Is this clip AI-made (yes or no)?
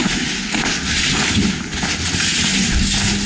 no